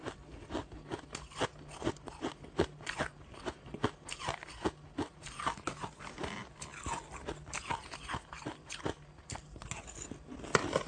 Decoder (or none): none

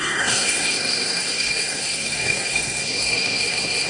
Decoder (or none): codec, SNAC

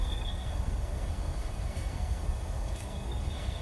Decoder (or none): codec, SNAC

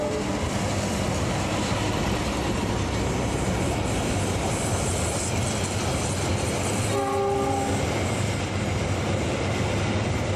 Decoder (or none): none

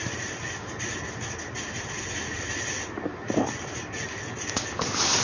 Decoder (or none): none